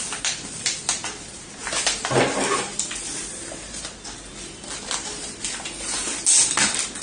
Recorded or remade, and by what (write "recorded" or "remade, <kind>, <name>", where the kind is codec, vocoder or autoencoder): recorded